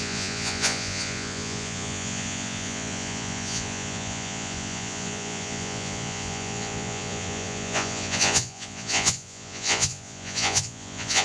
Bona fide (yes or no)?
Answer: no